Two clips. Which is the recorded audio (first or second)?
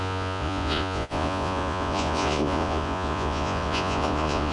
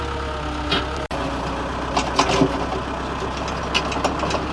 second